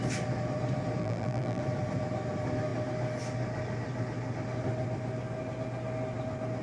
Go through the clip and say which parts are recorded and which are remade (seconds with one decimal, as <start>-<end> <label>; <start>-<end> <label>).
0.0-1.0 recorded; 1.0-1.6 remade; 1.6-6.6 recorded